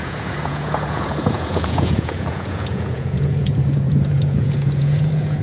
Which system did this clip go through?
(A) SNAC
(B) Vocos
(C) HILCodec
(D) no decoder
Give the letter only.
B